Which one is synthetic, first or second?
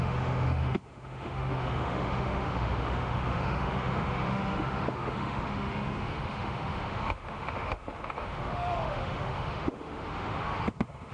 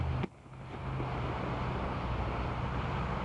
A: first